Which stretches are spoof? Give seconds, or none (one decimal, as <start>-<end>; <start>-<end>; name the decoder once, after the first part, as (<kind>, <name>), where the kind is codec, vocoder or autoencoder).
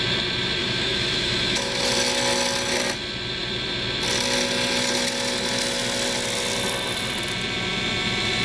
0.6-1.9 (autoencoder, DAC-VAE)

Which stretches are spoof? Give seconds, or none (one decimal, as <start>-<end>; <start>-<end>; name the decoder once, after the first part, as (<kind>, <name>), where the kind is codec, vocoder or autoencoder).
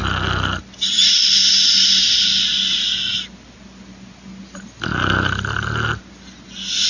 none